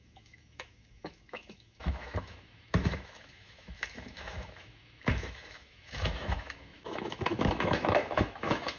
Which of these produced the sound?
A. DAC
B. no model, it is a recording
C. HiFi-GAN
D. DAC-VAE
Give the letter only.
D